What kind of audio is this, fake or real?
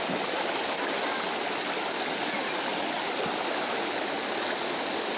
real